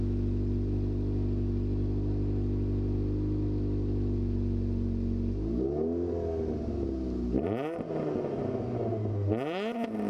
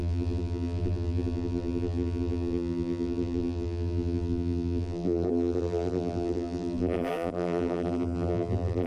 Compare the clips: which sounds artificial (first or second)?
second